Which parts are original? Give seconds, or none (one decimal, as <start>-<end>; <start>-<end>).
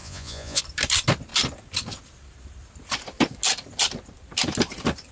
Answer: 0.6-5.1